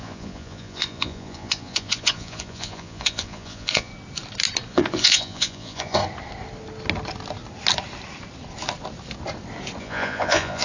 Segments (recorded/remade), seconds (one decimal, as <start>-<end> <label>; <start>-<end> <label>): 0.0-3.9 remade; 3.9-4.7 recorded; 4.7-6.0 remade; 6.0-9.8 recorded; 9.8-10.6 remade